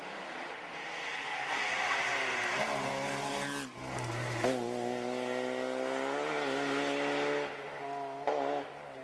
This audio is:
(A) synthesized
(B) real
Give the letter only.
B